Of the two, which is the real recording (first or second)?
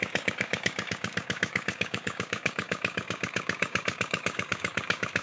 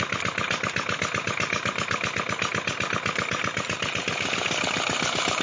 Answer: second